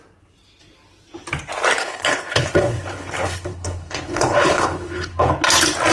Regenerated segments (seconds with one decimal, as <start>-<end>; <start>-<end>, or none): 1.8-5.3